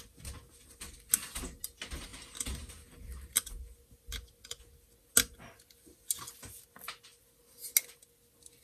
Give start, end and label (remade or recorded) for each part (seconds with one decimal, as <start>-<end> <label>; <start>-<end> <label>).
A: 0.0-8.6 recorded